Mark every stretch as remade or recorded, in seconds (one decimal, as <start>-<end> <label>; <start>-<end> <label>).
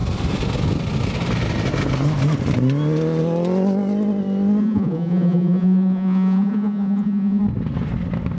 0.0-4.6 recorded; 4.6-7.4 remade; 7.4-8.4 recorded